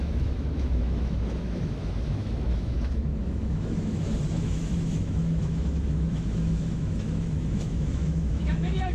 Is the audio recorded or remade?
remade